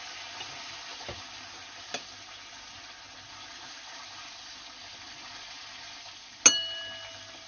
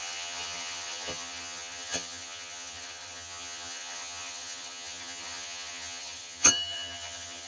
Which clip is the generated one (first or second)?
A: second